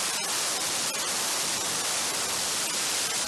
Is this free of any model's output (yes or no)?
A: yes